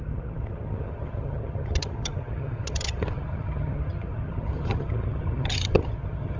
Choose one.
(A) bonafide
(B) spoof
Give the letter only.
B